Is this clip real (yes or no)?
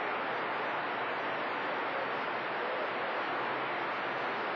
yes